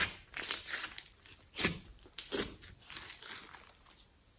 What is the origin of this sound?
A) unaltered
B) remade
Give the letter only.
A